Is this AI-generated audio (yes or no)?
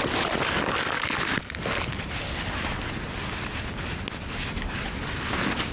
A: no